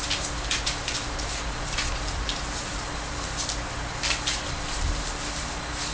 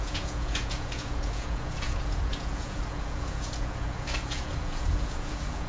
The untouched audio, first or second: first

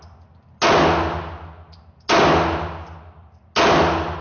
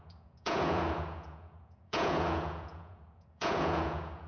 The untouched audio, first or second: first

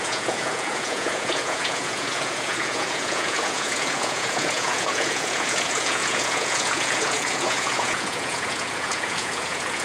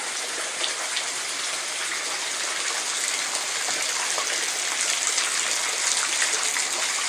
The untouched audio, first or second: second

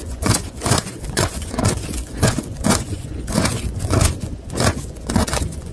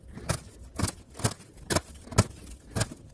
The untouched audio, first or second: second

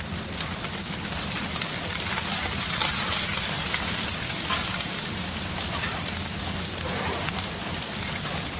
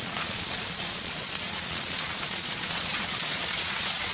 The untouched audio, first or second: first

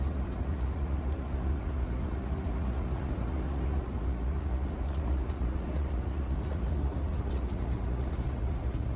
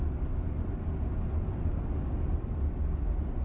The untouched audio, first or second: second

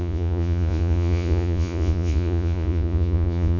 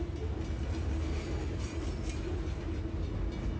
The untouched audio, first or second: second